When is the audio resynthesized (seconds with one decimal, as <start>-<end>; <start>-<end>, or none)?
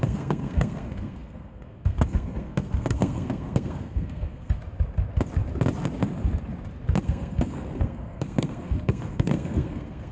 0.0-4.6; 7.0-10.1